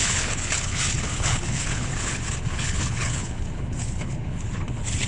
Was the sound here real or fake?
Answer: fake